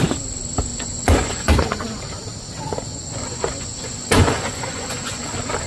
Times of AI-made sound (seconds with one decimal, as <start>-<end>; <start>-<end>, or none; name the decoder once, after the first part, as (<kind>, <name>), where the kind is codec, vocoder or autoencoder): 0.7-2.0 (vocoder, Vocos); 2.9-5.3